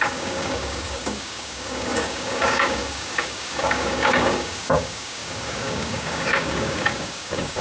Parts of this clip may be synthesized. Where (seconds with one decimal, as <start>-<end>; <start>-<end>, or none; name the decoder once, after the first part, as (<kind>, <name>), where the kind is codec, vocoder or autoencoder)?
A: 0.0-7.6 (codec, DAC)